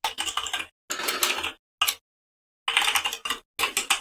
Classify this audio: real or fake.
real